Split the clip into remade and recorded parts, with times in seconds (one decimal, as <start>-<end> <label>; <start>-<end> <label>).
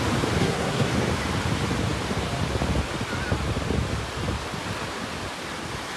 0.0-0.4 recorded; 0.4-0.9 remade; 0.9-6.0 recorded